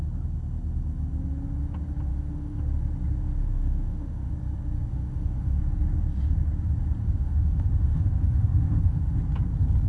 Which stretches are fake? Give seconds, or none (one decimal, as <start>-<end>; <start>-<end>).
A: 2.1-2.6; 3.4-4.3; 4.9-5.6; 7.0-9.2